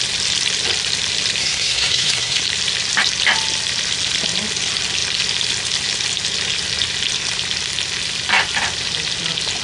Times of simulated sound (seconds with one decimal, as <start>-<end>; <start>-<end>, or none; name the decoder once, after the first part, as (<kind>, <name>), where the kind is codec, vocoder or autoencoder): 1.4-2.4 (codec, SNAC)